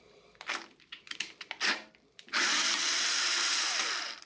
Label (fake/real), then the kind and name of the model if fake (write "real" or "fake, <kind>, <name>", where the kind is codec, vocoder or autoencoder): fake, vocoder, BigVGAN v2